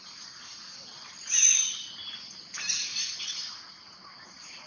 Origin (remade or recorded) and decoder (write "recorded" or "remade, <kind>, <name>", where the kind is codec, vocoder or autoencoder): recorded